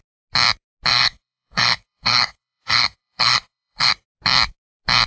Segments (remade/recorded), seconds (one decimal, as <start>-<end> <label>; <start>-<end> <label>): 0.0-0.9 recorded; 0.9-3.9 remade; 3.9-5.1 recorded